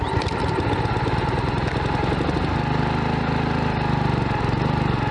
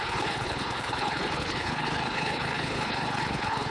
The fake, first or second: second